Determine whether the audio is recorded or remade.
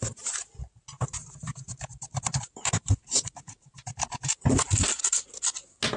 recorded